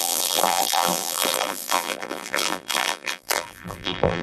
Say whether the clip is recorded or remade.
remade